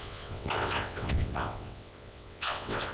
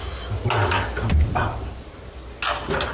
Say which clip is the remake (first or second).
first